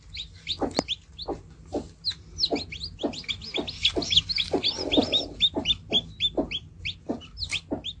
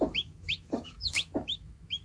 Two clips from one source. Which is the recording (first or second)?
first